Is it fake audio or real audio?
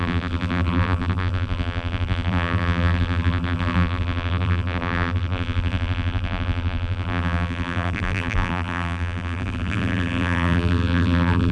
fake